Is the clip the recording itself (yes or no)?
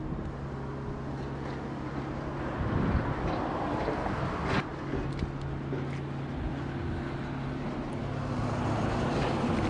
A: yes